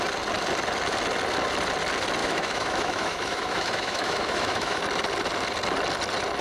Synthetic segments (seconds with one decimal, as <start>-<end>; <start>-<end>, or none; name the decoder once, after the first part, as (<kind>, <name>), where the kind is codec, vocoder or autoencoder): 2.2-4.8 (autoencoder, DAC-VAE)